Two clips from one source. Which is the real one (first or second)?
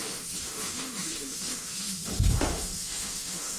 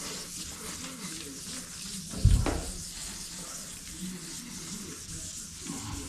second